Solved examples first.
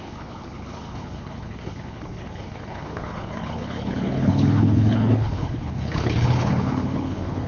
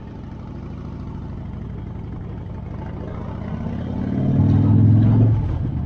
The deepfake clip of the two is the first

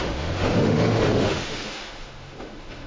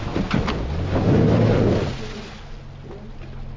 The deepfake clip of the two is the first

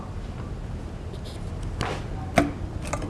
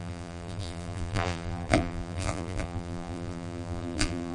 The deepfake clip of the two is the second